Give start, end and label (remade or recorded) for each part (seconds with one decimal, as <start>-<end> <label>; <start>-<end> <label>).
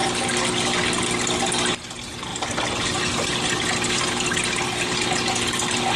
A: 0.0-6.0 recorded